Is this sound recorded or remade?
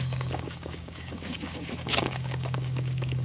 remade